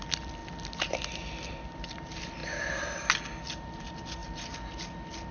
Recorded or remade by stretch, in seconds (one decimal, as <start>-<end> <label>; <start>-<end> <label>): 0.0-5.3 recorded